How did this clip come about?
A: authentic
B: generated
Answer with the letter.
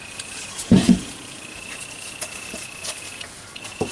B